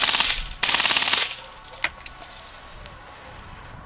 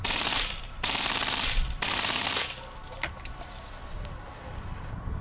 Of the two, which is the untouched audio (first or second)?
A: first